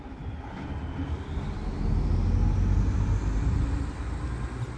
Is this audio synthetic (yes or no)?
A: no